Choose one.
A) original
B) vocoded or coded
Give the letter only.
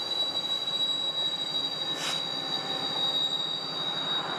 A